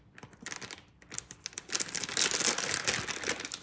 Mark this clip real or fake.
real